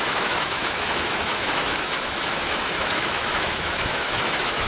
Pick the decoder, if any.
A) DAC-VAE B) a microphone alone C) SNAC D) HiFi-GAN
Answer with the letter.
A